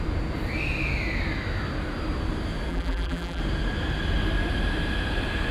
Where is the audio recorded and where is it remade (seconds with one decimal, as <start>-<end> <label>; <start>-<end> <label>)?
0.0-2.7 recorded; 2.7-3.4 remade; 3.4-5.5 recorded